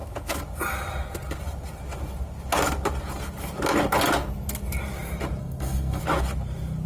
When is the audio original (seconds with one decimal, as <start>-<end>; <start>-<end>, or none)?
0.0-5.4; 6.0-6.9